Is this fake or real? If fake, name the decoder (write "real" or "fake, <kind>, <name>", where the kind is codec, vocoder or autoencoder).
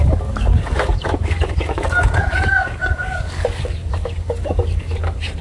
fake, codec, DAC